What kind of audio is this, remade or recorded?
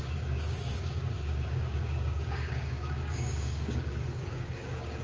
remade